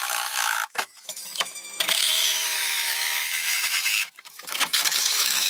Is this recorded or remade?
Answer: remade